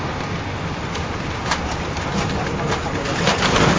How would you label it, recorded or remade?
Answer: recorded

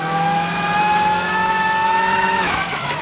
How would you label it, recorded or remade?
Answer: remade